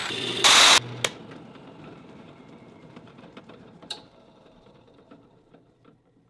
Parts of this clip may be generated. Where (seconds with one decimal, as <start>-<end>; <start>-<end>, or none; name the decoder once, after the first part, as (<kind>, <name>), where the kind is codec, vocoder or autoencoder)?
1.8-6.3 (vocoder, BigVGAN v2)